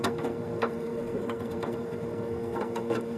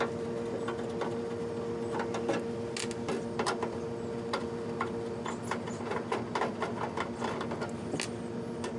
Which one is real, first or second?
second